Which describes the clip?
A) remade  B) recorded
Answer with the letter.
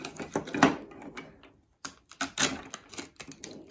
B